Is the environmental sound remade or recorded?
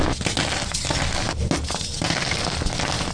recorded